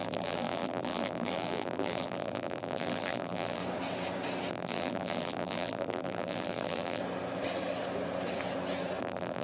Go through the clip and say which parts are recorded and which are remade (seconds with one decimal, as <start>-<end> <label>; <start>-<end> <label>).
0.0-3.6 remade; 3.6-4.5 recorded; 4.5-7.0 remade; 7.0-9.0 recorded; 9.0-9.4 remade